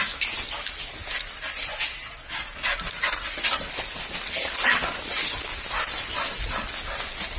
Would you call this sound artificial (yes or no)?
no